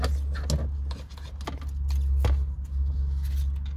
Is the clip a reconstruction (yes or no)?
no